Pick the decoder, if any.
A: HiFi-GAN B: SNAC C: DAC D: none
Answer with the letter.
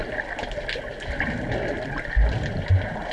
D